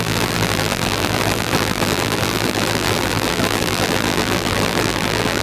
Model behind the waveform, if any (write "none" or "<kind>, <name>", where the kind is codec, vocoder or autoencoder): vocoder, BigVGAN v2